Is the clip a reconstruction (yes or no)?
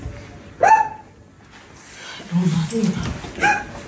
no